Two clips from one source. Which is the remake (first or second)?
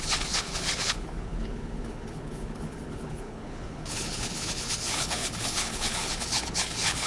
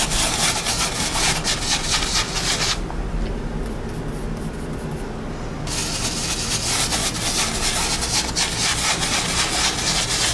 first